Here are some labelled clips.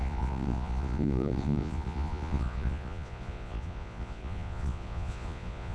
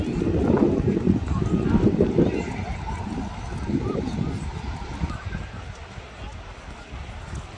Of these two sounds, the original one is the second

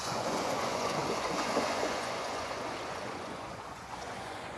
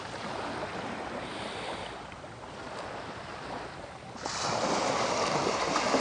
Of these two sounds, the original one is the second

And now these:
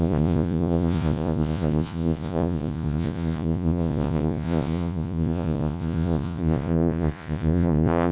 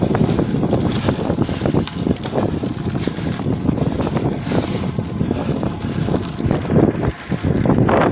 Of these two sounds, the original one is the second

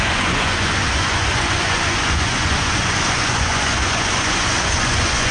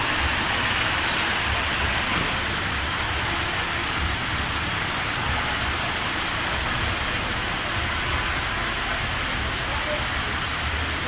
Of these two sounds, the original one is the second